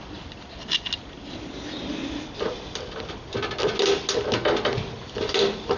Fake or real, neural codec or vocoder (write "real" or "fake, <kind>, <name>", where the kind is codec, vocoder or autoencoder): real